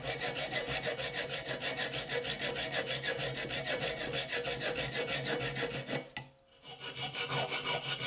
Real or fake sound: real